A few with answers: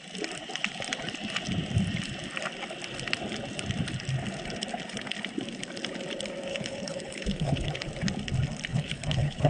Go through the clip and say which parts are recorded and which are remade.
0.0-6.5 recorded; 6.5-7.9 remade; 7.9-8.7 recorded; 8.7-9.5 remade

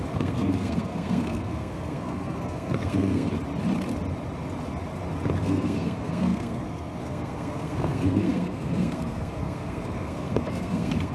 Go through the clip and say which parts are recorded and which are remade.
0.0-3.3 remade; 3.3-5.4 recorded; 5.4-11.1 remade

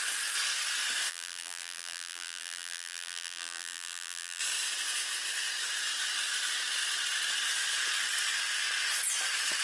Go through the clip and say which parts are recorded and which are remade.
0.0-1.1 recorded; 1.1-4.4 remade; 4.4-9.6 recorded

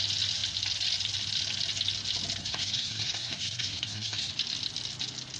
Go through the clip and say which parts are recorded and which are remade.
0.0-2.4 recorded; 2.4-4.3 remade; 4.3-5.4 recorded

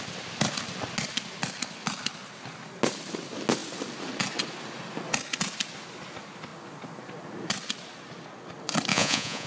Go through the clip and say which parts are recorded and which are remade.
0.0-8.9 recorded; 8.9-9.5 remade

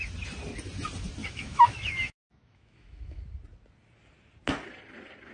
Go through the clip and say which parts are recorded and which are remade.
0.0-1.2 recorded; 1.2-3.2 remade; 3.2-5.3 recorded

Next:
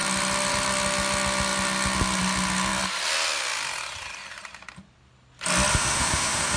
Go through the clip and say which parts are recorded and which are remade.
0.0-5.7 recorded; 5.7-6.6 remade

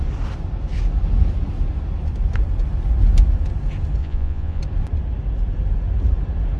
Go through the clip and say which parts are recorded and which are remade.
0.0-4.0 recorded; 4.0-4.6 remade; 4.6-6.6 recorded